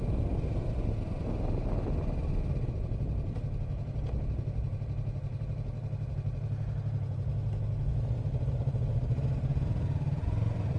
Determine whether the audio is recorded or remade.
recorded